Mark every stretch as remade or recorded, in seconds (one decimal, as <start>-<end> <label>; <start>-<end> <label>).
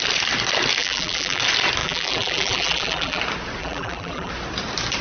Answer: 0.0-0.8 recorded; 0.8-1.4 remade; 1.4-1.8 recorded; 1.8-3.2 remade; 3.2-3.6 recorded; 3.6-4.3 remade; 4.3-5.0 recorded